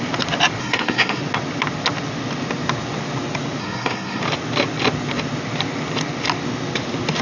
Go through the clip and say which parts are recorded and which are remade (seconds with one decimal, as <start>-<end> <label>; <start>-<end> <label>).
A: 0.0-0.6 recorded; 0.6-1.2 remade; 1.2-3.6 recorded; 3.6-4.2 remade; 4.2-7.2 recorded

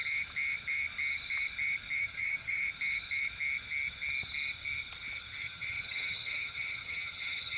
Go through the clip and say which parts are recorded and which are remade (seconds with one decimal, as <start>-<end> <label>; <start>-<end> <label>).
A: 0.0-2.0 recorded; 2.0-2.6 remade; 2.6-5.4 recorded; 5.4-7.6 remade